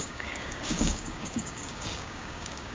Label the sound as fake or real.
fake